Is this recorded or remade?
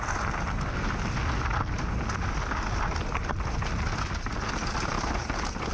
recorded